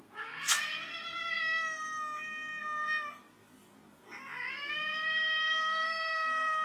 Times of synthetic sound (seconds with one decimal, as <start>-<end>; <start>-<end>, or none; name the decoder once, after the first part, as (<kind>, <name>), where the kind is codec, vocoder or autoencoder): 0.0-0.9 (codec, SNAC); 4.5-6.6